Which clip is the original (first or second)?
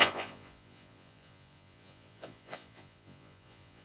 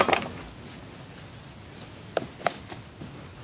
second